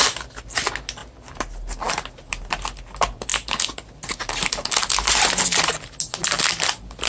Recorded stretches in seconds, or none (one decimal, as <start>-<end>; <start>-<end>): 0.0-7.1